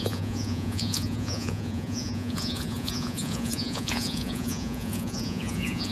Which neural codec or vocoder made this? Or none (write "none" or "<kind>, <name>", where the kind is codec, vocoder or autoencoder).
vocoder, Vocos